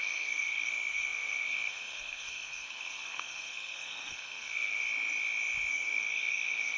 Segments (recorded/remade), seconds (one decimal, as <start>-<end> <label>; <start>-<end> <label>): 0.0-4.8 remade; 4.8-5.7 recorded; 5.7-6.8 remade